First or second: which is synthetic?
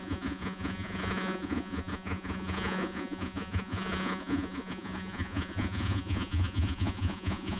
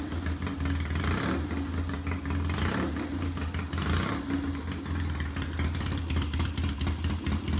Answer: first